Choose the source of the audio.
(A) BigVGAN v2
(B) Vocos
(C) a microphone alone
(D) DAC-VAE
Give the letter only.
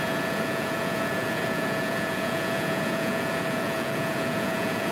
B